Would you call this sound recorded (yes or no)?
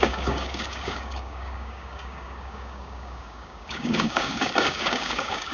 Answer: no